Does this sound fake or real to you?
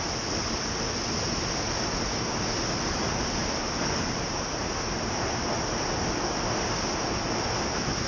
real